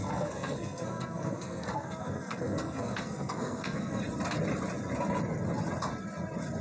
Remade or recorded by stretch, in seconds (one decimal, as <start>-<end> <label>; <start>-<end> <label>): 0.0-4.0 remade; 4.0-6.6 recorded